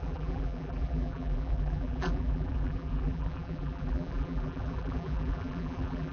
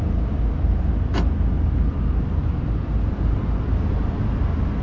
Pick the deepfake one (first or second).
first